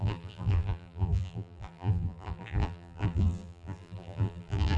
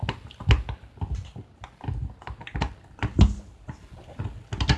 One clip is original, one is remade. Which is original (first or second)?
second